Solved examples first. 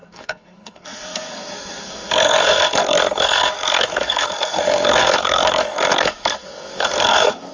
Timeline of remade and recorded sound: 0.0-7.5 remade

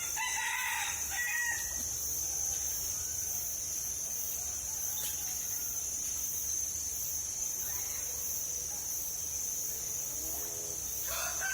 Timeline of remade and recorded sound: 0.0-3.1 recorded; 3.1-7.8 remade; 7.8-11.5 recorded

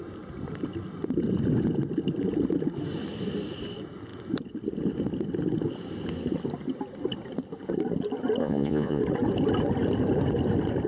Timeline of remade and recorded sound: 0.0-8.4 recorded; 8.4-9.0 remade; 9.0-10.9 recorded

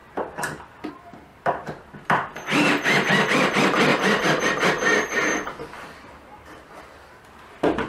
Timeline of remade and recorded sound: 0.0-1.3 recorded; 1.3-1.9 remade; 1.9-7.9 recorded

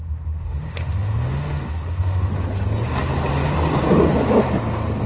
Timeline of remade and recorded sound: 0.0-2.3 remade; 2.3-5.1 recorded

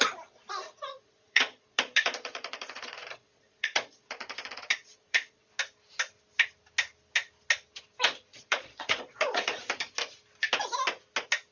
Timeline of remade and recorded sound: 0.0-0.7 recorded; 0.7-5.5 remade; 5.5-8.3 recorded; 8.3-9.6 remade; 9.6-11.5 recorded

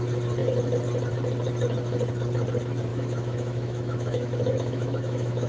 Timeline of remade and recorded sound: 0.0-2.9 recorded; 2.9-5.5 remade

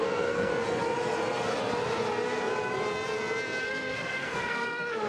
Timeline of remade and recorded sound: 0.0-0.5 remade; 0.5-3.6 recorded; 3.6-5.1 remade